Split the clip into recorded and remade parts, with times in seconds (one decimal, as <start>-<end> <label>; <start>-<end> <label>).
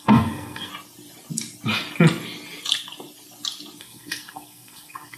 0.0-0.7 remade; 0.7-3.8 recorded; 3.8-5.2 remade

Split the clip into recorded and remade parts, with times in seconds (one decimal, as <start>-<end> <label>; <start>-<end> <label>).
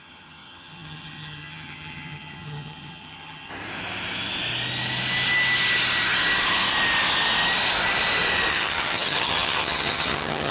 0.0-3.5 remade; 3.5-8.5 recorded; 8.5-10.5 remade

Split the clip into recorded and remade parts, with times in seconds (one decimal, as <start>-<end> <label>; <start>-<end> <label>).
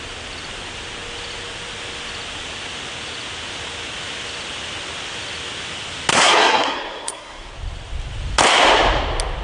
0.0-6.1 recorded; 6.1-7.5 remade; 7.5-9.4 recorded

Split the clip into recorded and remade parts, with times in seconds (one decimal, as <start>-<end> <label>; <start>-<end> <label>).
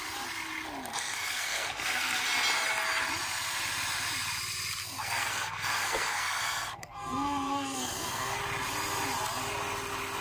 0.0-0.9 recorded; 0.9-2.2 remade; 2.2-4.8 recorded; 4.8-8.4 remade; 8.4-10.2 recorded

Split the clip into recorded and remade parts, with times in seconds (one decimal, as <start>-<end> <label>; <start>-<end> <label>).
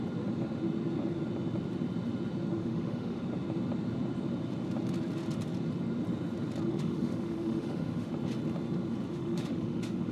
0.0-2.6 recorded; 2.6-3.2 remade; 3.2-6.7 recorded; 6.7-8.1 remade; 8.1-9.1 recorded; 9.1-10.1 remade